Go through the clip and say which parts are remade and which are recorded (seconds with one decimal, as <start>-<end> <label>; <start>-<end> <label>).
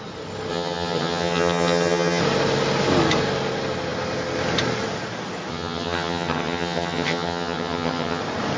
0.0-0.5 recorded; 0.5-2.2 remade; 2.2-5.5 recorded; 5.5-8.2 remade; 8.2-8.6 recorded